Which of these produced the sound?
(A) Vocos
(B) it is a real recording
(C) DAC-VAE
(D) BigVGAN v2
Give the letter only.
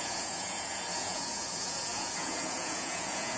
A